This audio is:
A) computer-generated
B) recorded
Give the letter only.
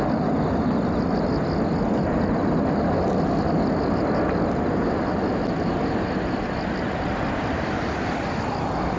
B